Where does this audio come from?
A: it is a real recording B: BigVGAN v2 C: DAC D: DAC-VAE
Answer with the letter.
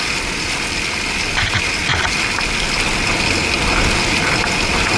A